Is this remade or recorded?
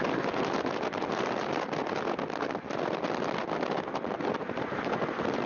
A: recorded